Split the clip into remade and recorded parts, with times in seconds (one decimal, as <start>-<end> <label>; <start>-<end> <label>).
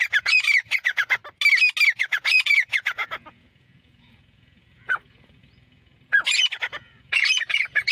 0.0-1.2 remade; 1.2-2.0 recorded; 2.0-7.9 remade